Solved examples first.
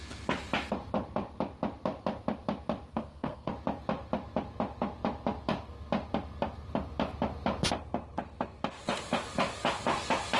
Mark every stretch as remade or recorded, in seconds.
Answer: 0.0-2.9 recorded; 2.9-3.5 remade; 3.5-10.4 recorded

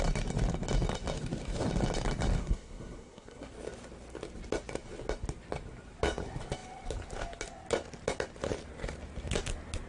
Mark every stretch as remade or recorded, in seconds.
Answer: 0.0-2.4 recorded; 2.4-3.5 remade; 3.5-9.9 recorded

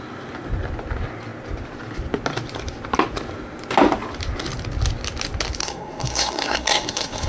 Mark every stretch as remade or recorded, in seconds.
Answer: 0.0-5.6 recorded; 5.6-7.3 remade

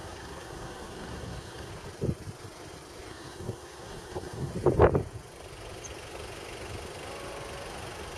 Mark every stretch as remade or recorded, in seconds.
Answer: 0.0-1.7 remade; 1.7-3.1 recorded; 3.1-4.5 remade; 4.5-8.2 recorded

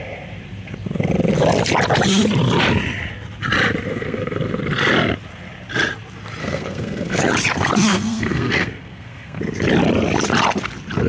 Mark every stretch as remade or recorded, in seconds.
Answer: 0.0-3.9 recorded; 3.9-4.6 remade; 4.6-6.4 recorded; 6.4-7.2 remade; 7.2-7.9 recorded; 7.9-9.4 remade; 9.4-11.1 recorded